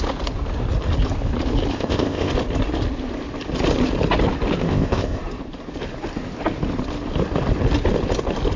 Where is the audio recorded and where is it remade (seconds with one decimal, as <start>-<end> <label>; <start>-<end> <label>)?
0.0-1.7 recorded; 1.7-2.3 remade; 2.3-4.6 recorded; 4.6-5.2 remade; 5.2-8.6 recorded